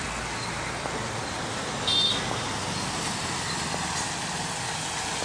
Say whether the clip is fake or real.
real